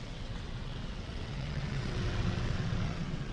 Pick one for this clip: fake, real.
fake